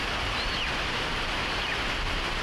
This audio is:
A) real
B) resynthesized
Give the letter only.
A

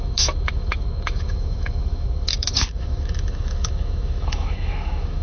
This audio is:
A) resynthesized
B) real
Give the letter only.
A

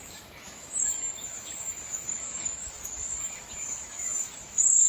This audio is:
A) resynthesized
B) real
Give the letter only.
A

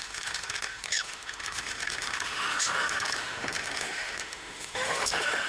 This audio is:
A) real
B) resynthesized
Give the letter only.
B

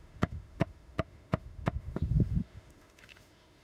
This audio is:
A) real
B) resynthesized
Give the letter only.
B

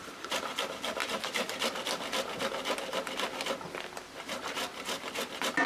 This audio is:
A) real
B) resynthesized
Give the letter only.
A